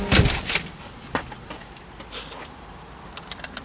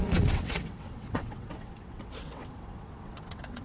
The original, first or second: first